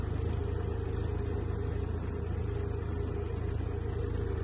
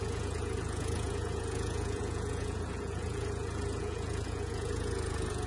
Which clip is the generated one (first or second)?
second